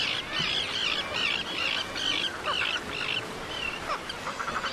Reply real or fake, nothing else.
real